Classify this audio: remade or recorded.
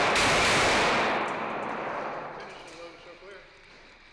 recorded